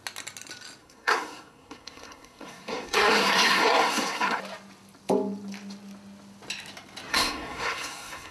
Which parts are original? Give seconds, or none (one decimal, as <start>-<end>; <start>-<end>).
0.0-0.8; 4.4-7.1